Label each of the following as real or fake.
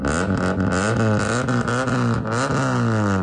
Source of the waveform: real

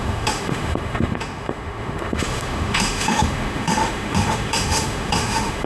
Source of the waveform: fake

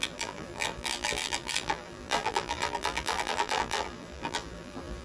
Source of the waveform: fake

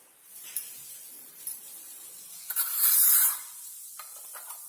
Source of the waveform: fake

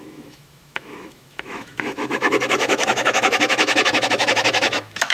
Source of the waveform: fake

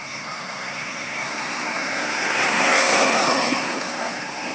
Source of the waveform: fake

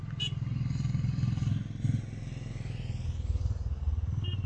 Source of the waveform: real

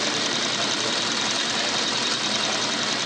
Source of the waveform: real